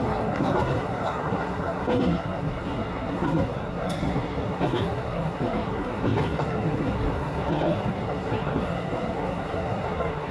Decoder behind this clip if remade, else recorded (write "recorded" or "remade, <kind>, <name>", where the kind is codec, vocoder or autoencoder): remade, codec, SNAC